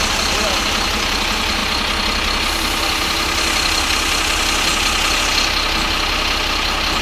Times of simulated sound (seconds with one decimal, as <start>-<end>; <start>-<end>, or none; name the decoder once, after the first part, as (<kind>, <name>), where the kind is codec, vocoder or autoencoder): none